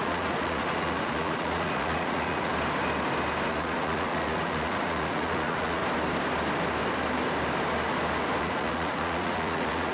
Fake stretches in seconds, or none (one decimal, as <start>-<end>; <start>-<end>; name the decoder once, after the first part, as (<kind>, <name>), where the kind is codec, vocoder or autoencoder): 0.0-2.5 (vocoder, Vocos); 3.5-5.8; 8.4-9.9